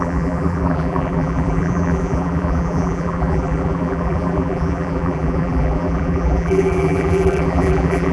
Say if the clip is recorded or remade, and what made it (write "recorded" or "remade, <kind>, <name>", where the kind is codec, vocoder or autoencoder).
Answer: remade, vocoder, BigVGAN v2